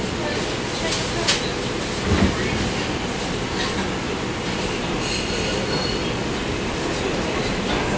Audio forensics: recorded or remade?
recorded